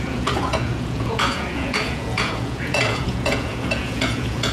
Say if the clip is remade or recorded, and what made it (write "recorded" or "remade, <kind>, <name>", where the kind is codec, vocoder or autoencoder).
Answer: remade, vocoder, Vocos